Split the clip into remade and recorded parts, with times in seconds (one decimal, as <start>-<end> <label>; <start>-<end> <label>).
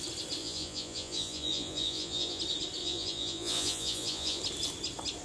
0.0-0.4 recorded; 0.4-2.4 remade; 2.4-2.8 recorded; 2.8-4.4 remade; 4.4-5.2 recorded